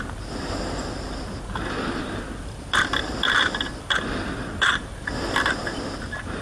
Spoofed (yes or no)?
yes